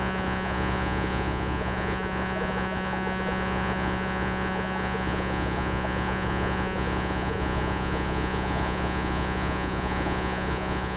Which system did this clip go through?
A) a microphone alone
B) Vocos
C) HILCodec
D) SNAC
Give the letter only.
B